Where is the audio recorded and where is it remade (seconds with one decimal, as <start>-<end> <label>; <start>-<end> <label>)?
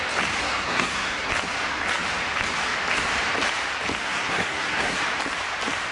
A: 0.0-0.4 recorded; 0.4-1.3 remade; 1.3-4.0 recorded; 4.0-5.0 remade; 5.0-5.9 recorded